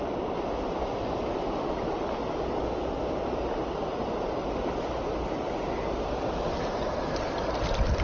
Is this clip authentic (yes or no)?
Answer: yes